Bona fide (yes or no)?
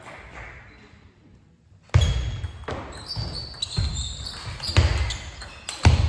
yes